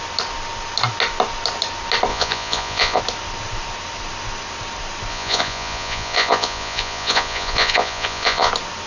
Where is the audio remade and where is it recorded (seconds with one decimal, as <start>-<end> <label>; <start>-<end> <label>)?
0.0-2.1 recorded; 2.1-3.0 remade; 3.0-5.1 recorded; 5.1-8.5 remade; 8.5-8.9 recorded

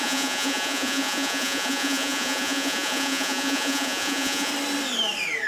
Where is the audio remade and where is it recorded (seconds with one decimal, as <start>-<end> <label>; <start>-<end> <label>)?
0.0-4.5 remade; 4.5-5.5 recorded